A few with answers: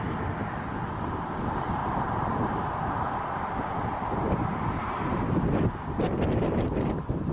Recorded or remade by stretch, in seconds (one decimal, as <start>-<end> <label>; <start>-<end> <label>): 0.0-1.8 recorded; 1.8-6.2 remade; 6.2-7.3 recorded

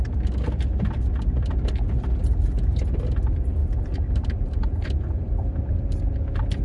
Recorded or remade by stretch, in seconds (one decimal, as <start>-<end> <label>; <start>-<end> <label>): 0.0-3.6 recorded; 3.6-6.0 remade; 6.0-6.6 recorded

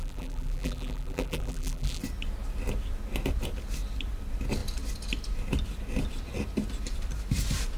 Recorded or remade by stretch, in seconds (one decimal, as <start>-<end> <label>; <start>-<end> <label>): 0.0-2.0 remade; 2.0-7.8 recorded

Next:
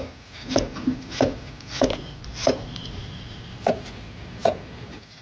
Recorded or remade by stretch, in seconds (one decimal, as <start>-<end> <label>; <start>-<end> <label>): 0.0-2.2 recorded; 2.2-3.7 remade; 3.7-5.2 recorded

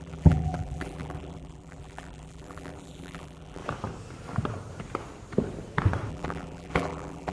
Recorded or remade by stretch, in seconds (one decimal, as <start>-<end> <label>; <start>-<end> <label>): 0.0-3.6 remade; 3.6-6.1 recorded; 6.1-7.3 remade

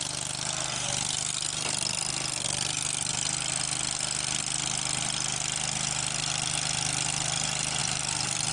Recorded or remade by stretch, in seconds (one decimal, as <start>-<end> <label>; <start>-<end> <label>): 0.0-7.8 recorded; 7.8-8.5 remade

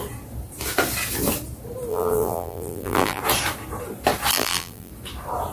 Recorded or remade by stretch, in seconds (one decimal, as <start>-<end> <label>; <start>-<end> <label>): 0.0-1.9 recorded; 1.9-3.2 remade; 3.2-4.3 recorded; 4.3-4.9 remade; 4.9-5.5 recorded